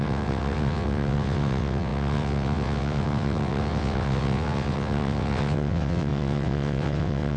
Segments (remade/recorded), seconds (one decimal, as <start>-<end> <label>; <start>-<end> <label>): 0.0-7.4 remade